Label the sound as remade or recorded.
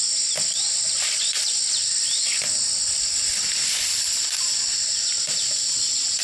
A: recorded